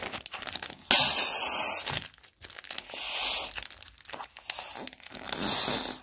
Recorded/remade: recorded